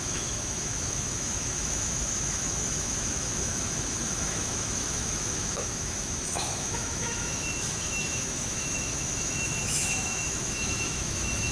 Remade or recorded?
remade